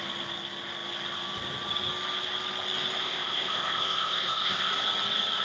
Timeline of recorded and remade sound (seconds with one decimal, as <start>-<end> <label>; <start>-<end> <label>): 0.0-3.0 recorded; 3.0-4.7 remade; 4.7-5.4 recorded